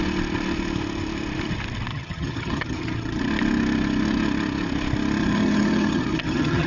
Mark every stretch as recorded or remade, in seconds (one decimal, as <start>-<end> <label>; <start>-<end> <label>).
0.0-1.9 recorded; 1.9-3.2 remade; 3.2-5.2 recorded; 5.2-6.7 remade